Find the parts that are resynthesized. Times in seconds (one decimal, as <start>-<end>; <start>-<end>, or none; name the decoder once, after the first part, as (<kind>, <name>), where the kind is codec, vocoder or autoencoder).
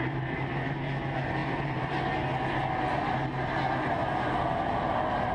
none